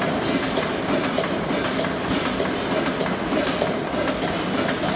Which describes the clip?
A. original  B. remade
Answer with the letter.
A